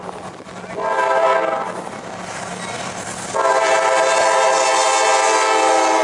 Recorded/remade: recorded